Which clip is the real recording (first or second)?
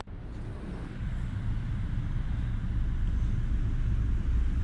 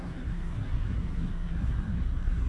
first